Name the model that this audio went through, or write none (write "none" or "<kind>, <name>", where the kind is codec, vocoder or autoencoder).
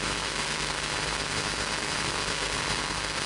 codec, SNAC